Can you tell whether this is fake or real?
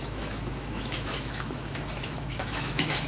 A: fake